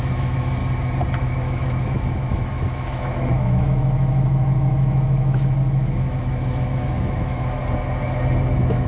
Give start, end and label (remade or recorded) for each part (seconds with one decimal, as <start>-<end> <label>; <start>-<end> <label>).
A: 0.0-0.6 remade; 0.6-1.2 recorded; 1.2-7.6 remade; 7.6-8.5 recorded; 8.5-8.9 remade